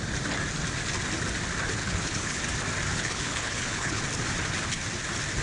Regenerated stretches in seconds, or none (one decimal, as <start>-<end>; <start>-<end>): 1.8-2.4; 2.9-4.0